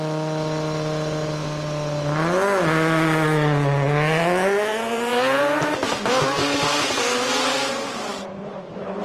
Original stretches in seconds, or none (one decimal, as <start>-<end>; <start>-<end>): 0.0-9.0